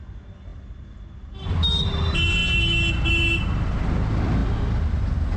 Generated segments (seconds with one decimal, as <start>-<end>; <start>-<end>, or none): none